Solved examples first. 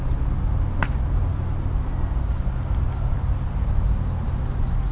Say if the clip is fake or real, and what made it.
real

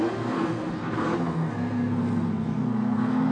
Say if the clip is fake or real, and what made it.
fake, codec, SNAC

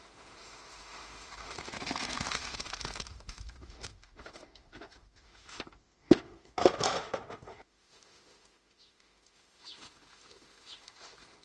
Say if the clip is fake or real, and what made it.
fake, autoencoder, DAC-VAE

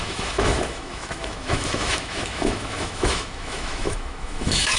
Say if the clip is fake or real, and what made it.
fake, autoencoder, DAC-VAE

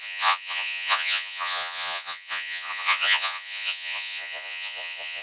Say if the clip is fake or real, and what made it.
fake, vocoder, Vocos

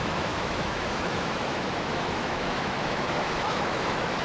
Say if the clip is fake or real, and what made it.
fake, autoencoder, DAC-VAE